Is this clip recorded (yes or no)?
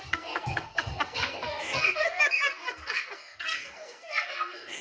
no